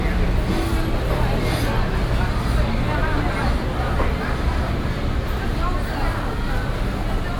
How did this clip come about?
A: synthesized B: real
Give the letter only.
B